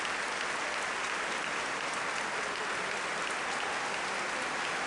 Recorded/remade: recorded